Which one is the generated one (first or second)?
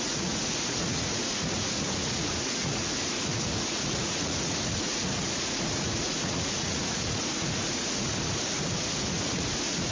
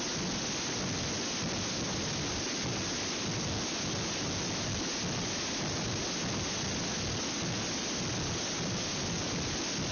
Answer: first